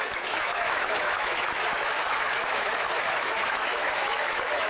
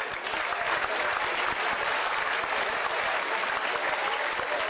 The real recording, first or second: second